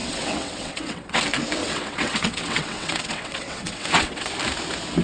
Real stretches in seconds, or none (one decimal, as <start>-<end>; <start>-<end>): 1.2-1.6; 4.3-5.0